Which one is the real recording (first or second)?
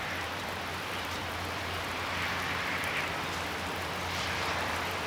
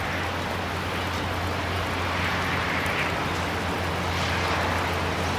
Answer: second